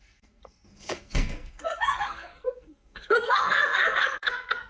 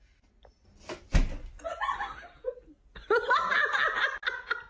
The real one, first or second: second